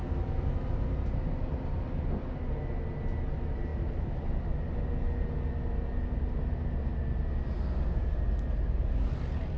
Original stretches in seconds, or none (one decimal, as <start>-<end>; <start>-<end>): 0.0-9.6